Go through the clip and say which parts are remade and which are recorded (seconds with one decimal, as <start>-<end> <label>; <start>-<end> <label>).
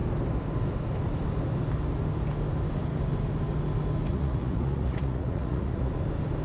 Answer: 0.0-4.1 recorded; 4.1-5.9 remade; 5.9-6.4 recorded